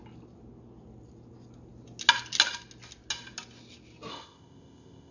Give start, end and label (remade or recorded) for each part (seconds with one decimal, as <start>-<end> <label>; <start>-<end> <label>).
0.0-4.1 recorded; 4.1-5.1 remade